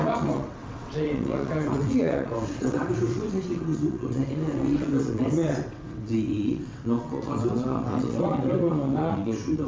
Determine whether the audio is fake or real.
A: fake